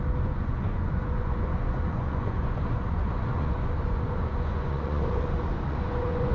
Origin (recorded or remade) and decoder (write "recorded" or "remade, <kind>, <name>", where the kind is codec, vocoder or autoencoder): remade, vocoder, Vocos